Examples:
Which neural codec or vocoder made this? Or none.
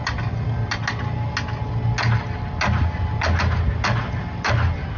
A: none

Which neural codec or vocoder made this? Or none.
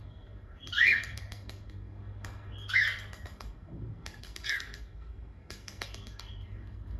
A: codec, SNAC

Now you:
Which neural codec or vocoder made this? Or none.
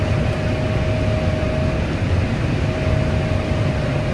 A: none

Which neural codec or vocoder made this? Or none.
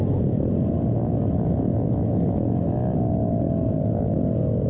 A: none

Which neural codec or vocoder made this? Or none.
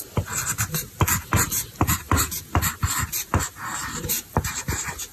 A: none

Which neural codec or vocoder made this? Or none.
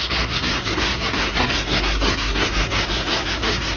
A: codec, SNAC